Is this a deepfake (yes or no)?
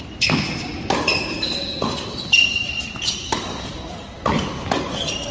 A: no